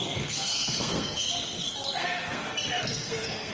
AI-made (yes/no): yes